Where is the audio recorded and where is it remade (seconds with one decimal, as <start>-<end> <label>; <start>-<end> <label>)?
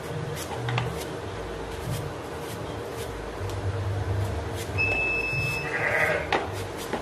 0.0-7.0 recorded